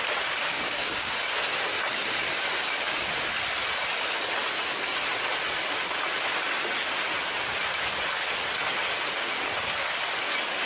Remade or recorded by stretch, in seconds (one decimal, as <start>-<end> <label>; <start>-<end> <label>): 0.0-0.5 recorded; 0.5-1.1 remade; 1.1-10.7 recorded

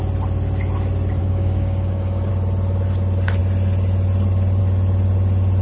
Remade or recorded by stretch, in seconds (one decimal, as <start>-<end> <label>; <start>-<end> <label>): 0.0-1.2 recorded; 1.2-2.3 remade; 2.3-5.6 recorded

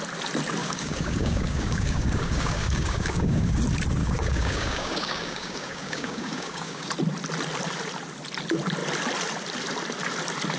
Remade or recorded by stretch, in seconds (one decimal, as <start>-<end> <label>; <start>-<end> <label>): 0.0-0.6 recorded; 0.6-3.6 remade; 3.6-4.0 recorded; 4.0-6.9 remade; 6.9-10.6 recorded

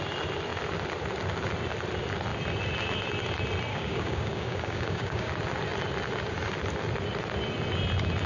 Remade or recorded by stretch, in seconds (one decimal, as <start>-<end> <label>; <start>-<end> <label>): 0.0-3.7 recorded; 3.7-5.3 remade; 5.3-8.3 recorded